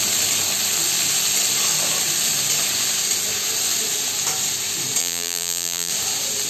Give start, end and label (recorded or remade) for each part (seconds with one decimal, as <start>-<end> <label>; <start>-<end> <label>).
0.0-5.0 recorded; 5.0-5.9 remade; 5.9-6.5 recorded